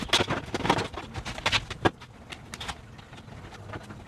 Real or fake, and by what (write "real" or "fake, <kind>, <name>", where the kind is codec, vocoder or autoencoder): real